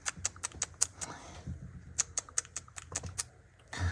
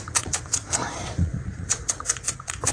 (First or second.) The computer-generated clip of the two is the second